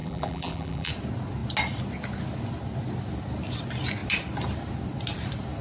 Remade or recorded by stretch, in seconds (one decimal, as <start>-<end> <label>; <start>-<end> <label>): 0.0-0.9 remade; 0.9-5.6 recorded

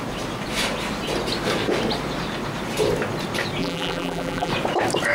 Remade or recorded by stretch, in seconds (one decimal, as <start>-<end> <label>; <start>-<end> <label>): 0.0-3.6 recorded; 3.6-4.5 remade; 4.5-5.1 recorded

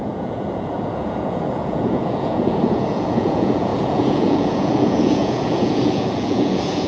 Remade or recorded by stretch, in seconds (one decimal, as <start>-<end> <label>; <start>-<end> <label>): 0.0-6.9 remade

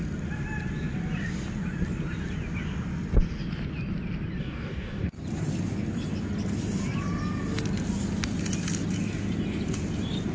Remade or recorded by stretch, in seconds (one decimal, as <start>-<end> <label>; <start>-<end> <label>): 0.0-4.4 recorded; 4.4-5.1 remade; 5.1-10.3 recorded